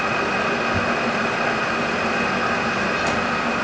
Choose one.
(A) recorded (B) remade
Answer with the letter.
A